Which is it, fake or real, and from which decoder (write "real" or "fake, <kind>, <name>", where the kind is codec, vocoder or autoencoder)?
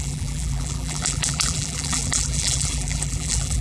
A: fake, vocoder, BigVGAN v2